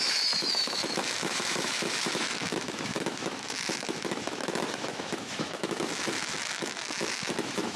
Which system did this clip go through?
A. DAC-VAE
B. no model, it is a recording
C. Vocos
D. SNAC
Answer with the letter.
A